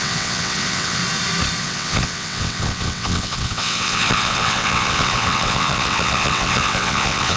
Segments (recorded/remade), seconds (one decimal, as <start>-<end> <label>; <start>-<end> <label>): 0.0-1.0 remade; 1.0-1.6 recorded; 1.6-7.4 remade